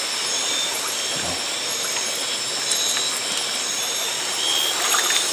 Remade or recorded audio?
recorded